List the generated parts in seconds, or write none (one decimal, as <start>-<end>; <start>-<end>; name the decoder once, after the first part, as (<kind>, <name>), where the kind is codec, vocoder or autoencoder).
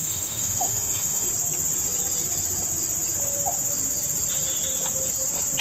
0.0-1.3 (autoencoder, DAC-VAE)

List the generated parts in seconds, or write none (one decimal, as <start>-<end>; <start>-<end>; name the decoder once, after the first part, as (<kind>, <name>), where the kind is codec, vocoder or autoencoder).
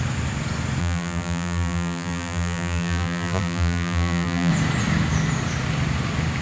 0.8-4.5 (vocoder, BigVGAN v2)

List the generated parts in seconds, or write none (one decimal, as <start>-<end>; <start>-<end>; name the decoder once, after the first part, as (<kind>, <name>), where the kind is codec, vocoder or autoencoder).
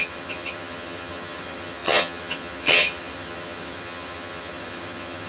0.0-5.3 (vocoder, HiFi-GAN)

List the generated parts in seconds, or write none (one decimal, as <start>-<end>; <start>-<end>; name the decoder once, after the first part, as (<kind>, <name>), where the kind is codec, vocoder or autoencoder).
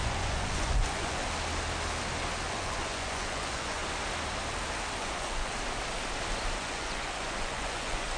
0.0-1.2 (vocoder, Vocos); 2.5-3.8; 5.0-5.5; 6.6-8.2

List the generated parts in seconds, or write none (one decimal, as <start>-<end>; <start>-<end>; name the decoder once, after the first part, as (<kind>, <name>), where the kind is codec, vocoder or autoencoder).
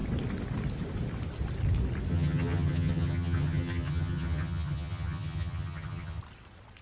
2.1-6.2 (vocoder, HiFi-GAN)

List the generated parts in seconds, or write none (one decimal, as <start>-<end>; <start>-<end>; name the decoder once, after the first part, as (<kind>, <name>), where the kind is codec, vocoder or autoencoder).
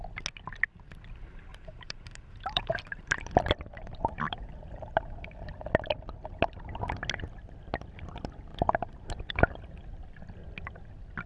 1.5-5.3 (vocoder, BigVGAN v2); 8.5-9.5